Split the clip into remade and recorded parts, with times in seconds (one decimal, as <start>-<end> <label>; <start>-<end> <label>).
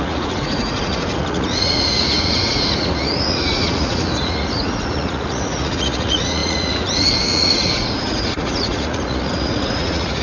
0.0-10.2 remade